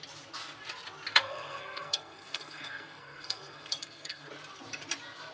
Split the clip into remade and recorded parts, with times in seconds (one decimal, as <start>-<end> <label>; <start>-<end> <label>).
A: 0.0-1.1 recorded; 1.1-4.3 remade; 4.3-5.3 recorded